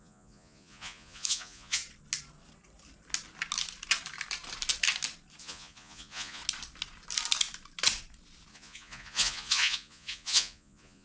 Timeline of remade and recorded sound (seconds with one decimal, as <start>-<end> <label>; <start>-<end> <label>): 0.0-1.8 remade; 1.8-5.4 recorded; 5.4-6.4 remade; 6.4-8.5 recorded; 8.5-11.0 remade